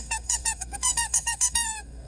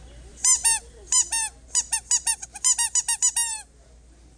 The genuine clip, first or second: second